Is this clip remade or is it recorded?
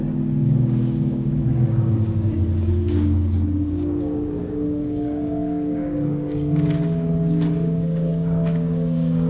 remade